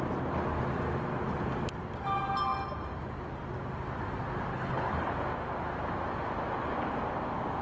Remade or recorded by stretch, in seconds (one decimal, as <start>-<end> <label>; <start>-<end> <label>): 0.0-4.5 recorded; 4.5-5.1 remade; 5.1-7.6 recorded